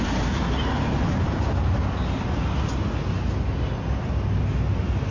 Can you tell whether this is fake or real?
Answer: real